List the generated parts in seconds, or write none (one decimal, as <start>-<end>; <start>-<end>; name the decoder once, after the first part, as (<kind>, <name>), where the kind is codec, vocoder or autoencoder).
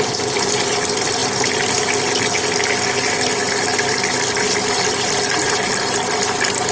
none